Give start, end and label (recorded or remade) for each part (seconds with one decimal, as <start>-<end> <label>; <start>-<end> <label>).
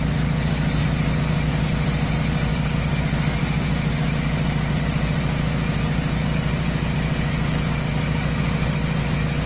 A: 0.0-2.5 recorded; 2.5-3.0 remade; 3.0-9.5 recorded